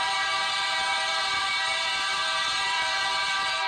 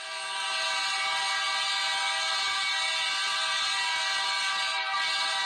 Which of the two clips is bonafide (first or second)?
second